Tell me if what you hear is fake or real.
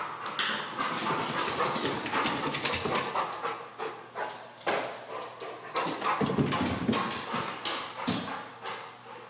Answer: real